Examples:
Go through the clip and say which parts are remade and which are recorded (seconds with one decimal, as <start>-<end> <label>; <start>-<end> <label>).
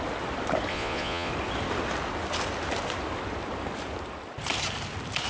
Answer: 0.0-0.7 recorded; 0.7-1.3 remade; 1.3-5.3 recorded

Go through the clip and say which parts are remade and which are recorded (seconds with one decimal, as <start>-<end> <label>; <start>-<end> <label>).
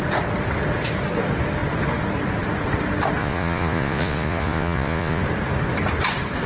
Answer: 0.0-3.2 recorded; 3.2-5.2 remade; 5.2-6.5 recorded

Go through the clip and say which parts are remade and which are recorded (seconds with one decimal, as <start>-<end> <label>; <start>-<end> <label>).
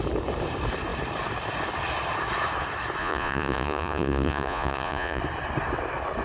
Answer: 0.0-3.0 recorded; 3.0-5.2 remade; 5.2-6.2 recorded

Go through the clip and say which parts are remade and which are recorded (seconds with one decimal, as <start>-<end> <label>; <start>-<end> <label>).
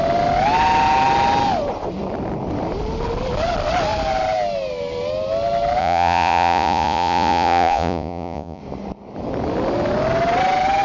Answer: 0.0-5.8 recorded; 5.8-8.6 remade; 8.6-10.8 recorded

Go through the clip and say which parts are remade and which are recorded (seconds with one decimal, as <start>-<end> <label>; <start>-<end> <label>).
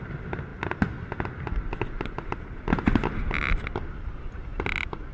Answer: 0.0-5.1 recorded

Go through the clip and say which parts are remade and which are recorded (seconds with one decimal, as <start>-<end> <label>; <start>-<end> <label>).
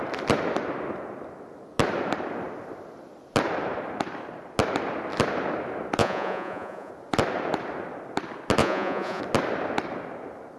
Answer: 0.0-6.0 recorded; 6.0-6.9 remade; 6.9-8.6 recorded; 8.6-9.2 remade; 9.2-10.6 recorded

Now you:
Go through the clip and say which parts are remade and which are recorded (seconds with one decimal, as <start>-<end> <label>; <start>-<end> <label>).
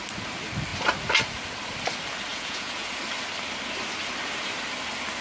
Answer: 0.0-2.3 recorded; 2.3-2.9 remade; 2.9-5.2 recorded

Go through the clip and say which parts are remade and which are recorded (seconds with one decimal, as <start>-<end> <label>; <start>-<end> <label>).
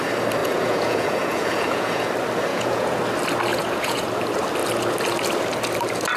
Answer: 0.0-0.4 recorded; 0.4-2.1 remade; 2.1-2.5 recorded; 2.5-3.0 remade; 3.0-3.5 recorded; 3.5-4.1 remade; 4.1-6.2 recorded